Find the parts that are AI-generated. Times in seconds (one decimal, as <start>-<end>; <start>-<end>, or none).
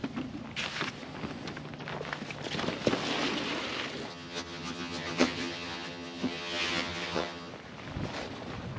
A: 4.1-7.5